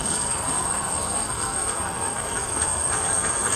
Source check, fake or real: fake